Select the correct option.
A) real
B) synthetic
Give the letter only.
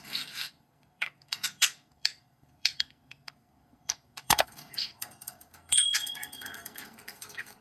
B